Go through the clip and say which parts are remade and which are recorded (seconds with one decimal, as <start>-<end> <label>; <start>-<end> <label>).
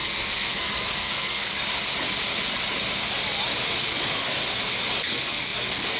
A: 0.0-1.5 remade; 1.5-5.1 recorded; 5.1-6.0 remade